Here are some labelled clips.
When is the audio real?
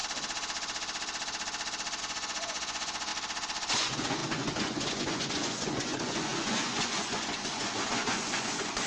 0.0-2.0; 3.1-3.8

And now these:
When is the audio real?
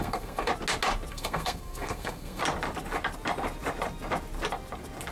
0.5-1.1; 2.4-5.1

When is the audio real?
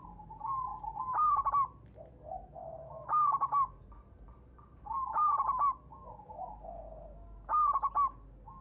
0.0-2.6; 3.7-8.6